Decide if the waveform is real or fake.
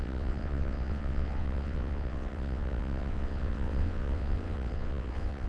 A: fake